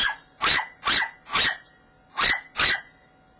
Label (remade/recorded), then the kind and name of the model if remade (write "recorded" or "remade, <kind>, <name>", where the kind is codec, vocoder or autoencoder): recorded